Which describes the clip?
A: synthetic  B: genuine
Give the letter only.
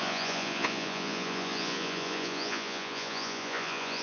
A